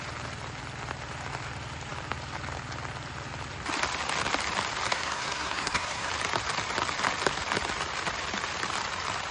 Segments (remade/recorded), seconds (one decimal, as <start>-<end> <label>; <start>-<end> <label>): 0.0-4.9 recorded; 4.9-6.1 remade; 6.1-9.3 recorded